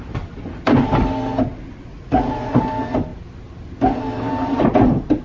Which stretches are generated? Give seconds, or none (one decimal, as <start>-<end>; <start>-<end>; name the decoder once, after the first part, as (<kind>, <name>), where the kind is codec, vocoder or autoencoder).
1.9-2.6 (vocoder, Vocos)